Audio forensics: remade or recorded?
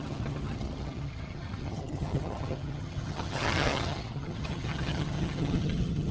remade